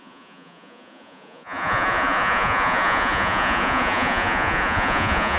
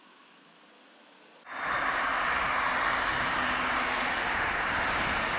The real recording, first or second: second